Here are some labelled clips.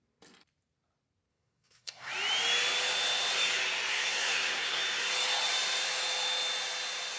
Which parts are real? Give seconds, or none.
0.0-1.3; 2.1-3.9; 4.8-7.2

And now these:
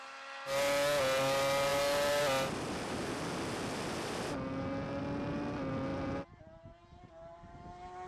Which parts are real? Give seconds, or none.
0.0-5.9; 6.4-8.1